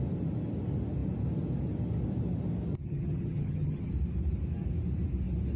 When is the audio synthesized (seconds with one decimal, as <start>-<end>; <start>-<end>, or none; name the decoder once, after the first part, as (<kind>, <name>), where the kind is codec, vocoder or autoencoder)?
2.7-3.9 (vocoder, HiFi-GAN)